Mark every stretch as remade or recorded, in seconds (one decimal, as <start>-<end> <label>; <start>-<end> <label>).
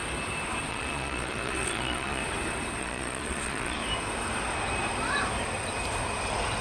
0.0-0.7 recorded; 0.7-2.2 remade; 2.2-2.8 recorded; 2.8-3.8 remade; 3.8-6.6 recorded